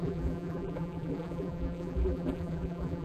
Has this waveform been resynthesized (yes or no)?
yes